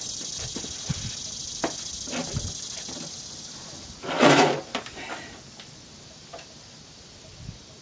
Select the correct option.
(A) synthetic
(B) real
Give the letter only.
B